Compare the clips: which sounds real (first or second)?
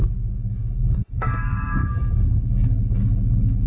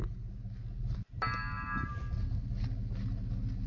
second